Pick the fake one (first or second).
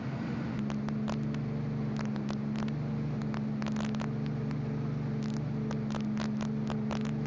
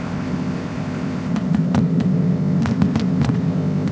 second